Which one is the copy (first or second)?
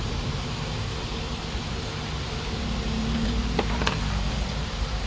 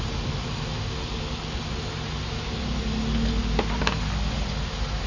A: first